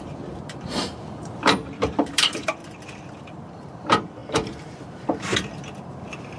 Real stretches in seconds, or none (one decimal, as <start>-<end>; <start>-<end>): 2.6-3.2

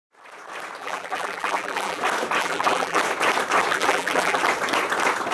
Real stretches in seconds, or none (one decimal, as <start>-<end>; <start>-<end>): 0.0-0.8; 2.0-2.4; 3.0-3.7; 4.4-5.3

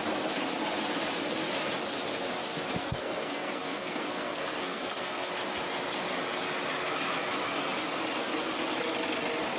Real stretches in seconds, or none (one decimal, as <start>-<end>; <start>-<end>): 0.0-2.8; 5.3-9.6

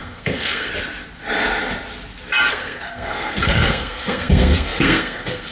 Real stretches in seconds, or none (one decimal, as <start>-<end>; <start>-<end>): 0.7-2.5